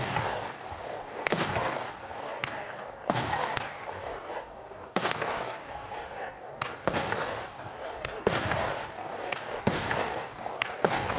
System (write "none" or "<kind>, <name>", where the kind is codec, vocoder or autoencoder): codec, DAC